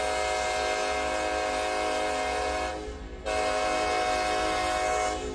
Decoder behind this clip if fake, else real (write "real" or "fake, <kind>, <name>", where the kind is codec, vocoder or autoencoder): real